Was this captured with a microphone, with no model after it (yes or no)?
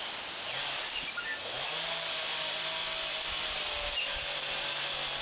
yes